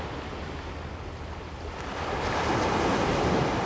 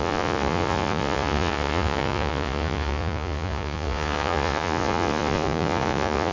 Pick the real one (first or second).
first